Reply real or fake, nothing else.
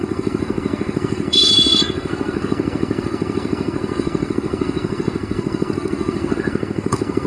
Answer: fake